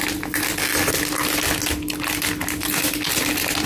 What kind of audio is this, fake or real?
real